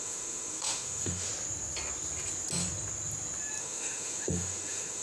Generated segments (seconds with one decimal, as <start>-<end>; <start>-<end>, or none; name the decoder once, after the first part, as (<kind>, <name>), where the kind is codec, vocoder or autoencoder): 0.0-1.3 (autoencoder, DAC-VAE); 3.6-5.0